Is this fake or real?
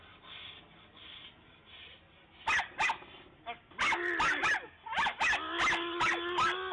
real